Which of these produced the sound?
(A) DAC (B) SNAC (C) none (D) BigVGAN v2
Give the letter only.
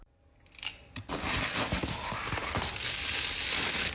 C